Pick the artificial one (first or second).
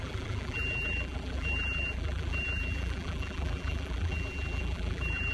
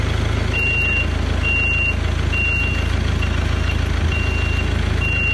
first